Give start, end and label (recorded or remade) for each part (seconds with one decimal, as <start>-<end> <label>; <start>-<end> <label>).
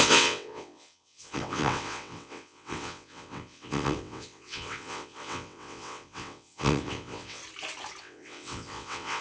0.0-7.4 remade; 7.4-8.0 recorded; 8.0-9.2 remade